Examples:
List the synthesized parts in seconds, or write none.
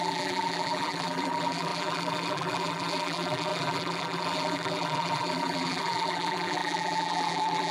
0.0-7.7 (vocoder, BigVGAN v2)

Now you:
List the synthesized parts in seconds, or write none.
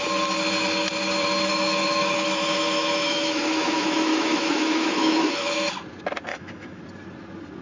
1.5-5.7 (autoencoder, DAC-VAE); 6.3-6.8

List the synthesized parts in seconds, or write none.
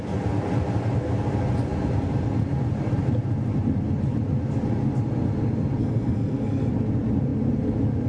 5.8-6.7 (codec, SNAC)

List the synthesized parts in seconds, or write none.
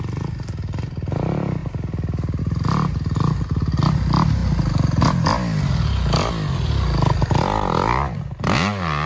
none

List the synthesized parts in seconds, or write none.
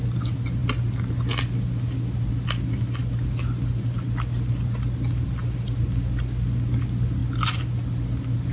none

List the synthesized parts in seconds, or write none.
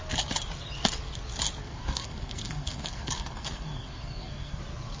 1.6-4.6 (codec, SNAC)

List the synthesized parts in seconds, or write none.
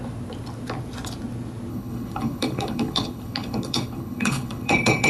1.7-5.1 (codec, HILCodec)